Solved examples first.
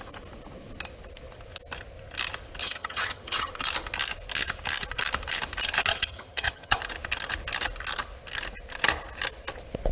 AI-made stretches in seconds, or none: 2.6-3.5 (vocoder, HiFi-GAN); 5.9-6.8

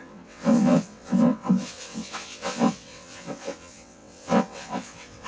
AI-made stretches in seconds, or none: 0.0-5.3 (vocoder, WaveNeXt)

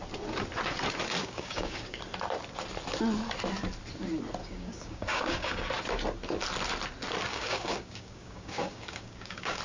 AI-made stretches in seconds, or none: 1.2-2.0 (codec, DAC); 4.4-5.7; 7.3-9.6

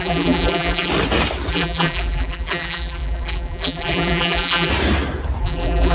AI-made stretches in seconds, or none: 0.0-0.9 (vocoder, BigVGAN v2); 1.5-4.7; 5.4-5.9

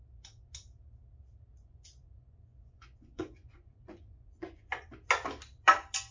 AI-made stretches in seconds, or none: 1.6-4.7 (vocoder, Vocos)

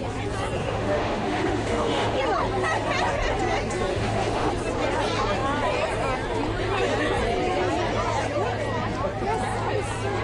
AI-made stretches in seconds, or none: 0.6-2.2 (autoencoder, DAC-VAE); 3.9-4.5